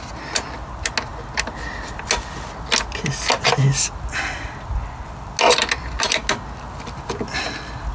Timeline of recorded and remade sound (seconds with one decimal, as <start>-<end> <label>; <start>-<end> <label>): 0.0-7.9 recorded